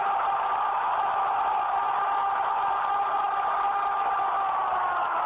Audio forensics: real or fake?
real